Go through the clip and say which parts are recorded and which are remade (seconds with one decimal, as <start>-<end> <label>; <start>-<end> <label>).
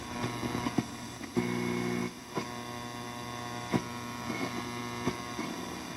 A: 0.0-6.0 recorded